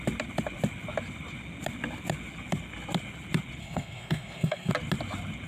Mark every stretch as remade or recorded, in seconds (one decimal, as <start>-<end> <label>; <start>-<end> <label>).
0.0-3.6 recorded; 3.6-4.7 remade; 4.7-5.5 recorded